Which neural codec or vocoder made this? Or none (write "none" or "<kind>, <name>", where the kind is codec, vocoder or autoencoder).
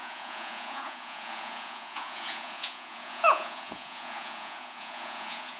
vocoder, Vocos